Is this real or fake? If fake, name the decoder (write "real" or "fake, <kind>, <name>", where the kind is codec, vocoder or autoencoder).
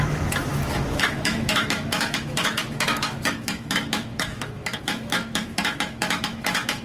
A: fake, autoencoder, DAC-VAE